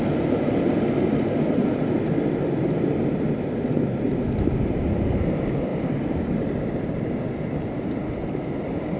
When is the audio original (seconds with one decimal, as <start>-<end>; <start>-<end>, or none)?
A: 0.0-5.7; 6.9-9.0

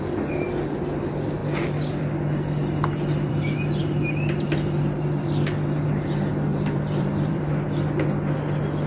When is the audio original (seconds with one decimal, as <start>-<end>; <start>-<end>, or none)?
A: 0.0-6.5; 7.4-8.9